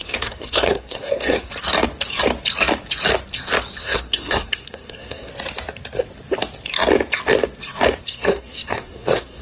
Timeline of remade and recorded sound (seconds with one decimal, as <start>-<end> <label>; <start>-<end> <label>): 0.0-1.5 remade; 1.5-3.8 recorded; 3.8-5.3 remade; 5.3-8.0 recorded; 8.0-9.4 remade